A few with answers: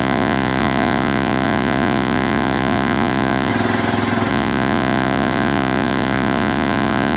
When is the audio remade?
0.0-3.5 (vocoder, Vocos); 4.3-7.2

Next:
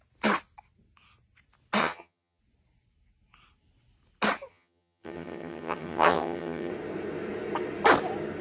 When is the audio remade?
1.8-2.4 (vocoder, HiFi-GAN); 4.5-6.7

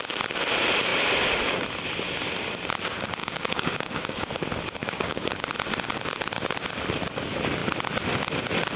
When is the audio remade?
3.2-4.3 (codec, DAC); 4.8-5.3

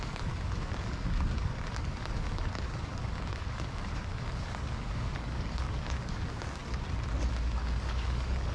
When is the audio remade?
0.0-6.6 (codec, DAC); 7.3-8.5

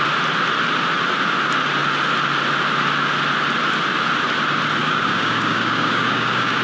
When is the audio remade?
4.8-6.6 (codec, DAC)

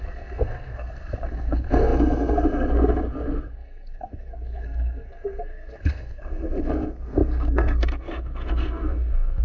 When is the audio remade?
0.0-9.4 (codec, SNAC)

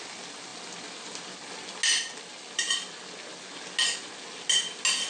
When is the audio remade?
none